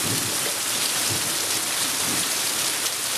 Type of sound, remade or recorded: recorded